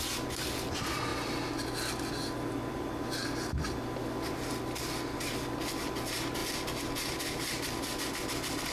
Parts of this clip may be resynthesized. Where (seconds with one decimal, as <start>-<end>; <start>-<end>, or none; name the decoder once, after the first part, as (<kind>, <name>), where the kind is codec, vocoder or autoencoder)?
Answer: none